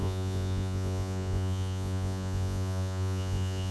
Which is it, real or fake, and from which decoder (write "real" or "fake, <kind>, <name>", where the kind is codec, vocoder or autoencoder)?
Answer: fake, vocoder, Vocos